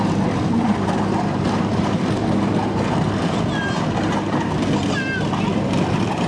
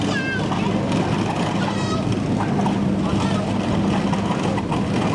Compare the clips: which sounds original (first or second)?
second